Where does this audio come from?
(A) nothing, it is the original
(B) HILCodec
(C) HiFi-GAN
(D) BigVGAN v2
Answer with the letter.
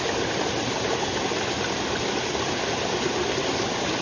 A